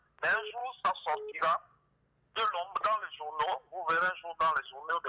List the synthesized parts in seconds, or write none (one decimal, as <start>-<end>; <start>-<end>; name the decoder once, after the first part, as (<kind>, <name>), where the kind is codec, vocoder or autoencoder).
0.6-1.9 (codec, DAC)